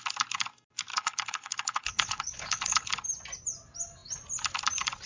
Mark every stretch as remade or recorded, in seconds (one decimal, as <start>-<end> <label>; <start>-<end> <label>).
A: 0.0-0.9 recorded; 0.9-2.9 remade; 2.9-5.1 recorded